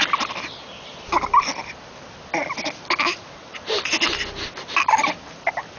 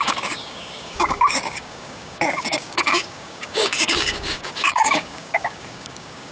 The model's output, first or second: second